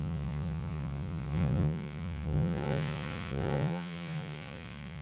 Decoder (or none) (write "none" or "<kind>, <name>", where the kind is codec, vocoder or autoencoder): vocoder, Vocos